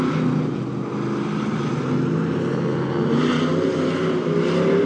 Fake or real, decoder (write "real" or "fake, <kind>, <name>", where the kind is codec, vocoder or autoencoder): real